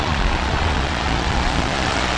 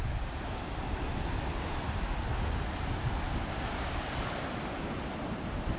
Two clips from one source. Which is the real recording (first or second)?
second